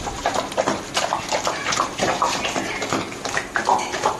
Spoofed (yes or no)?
no